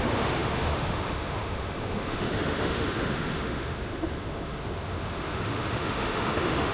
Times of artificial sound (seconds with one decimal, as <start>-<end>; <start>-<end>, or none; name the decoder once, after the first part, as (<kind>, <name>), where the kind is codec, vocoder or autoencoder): 0.0-6.7 (autoencoder, DAC-VAE)